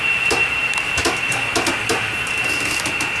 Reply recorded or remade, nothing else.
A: recorded